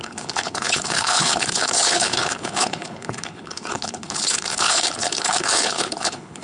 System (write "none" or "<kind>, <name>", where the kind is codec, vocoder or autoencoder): codec, HILCodec